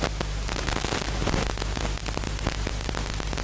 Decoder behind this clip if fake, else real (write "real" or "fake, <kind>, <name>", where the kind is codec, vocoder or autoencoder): real